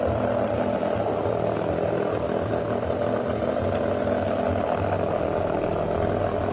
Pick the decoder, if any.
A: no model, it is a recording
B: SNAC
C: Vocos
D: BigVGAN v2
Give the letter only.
A